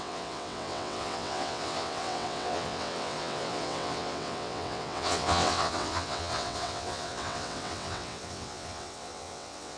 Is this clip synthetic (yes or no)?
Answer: yes